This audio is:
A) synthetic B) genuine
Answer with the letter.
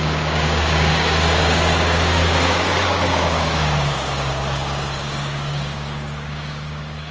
A